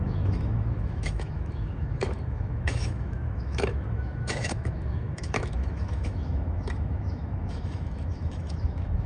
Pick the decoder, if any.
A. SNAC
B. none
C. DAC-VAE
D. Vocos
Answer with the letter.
C